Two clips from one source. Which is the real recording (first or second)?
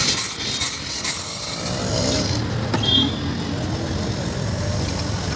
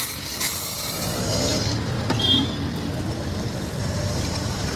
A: first